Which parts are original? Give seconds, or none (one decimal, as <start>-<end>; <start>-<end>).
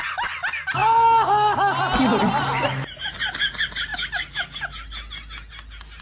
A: 0.0-6.0